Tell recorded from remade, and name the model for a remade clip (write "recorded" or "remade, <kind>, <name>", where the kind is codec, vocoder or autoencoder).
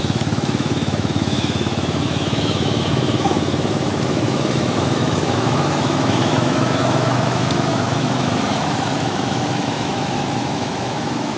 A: remade, autoencoder, DAC-VAE